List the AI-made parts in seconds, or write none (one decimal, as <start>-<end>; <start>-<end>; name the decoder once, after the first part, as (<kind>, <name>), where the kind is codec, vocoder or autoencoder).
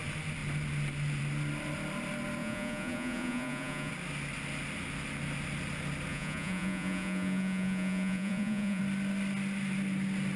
2.4-3.9 (vocoder, Vocos); 6.1-8.8